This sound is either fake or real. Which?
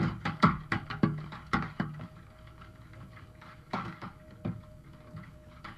fake